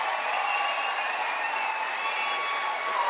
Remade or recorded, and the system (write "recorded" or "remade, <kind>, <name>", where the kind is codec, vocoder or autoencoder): recorded